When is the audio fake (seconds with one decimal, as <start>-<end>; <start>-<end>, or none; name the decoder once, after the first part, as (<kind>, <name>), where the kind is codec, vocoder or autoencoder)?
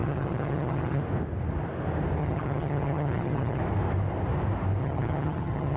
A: 0.0-1.0 (vocoder, HiFi-GAN); 2.2-3.6; 4.8-5.8